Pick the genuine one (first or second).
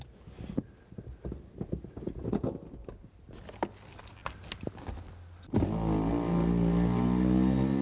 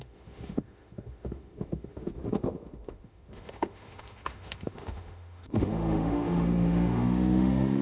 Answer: first